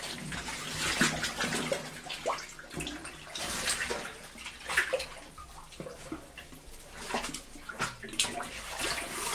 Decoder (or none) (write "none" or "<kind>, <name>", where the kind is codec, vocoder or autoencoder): none